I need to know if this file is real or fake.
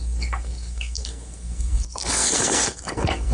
fake